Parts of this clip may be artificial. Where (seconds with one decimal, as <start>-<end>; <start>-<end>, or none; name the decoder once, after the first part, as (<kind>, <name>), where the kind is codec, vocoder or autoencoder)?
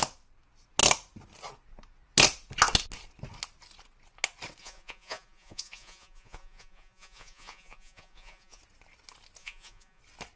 4.6-8.6 (vocoder, Vocos); 9.4-10.0